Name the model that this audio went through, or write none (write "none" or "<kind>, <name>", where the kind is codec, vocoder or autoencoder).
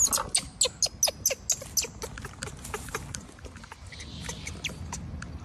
none